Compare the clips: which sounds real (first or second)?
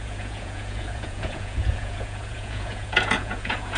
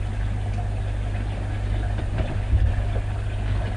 second